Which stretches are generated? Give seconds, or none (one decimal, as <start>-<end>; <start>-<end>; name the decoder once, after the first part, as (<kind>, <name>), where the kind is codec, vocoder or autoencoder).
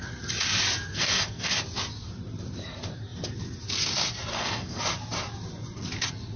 0.9-1.5 (codec, SNAC); 4.3-4.8